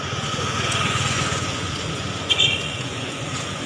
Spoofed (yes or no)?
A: yes